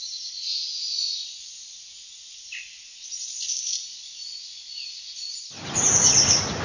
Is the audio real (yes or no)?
yes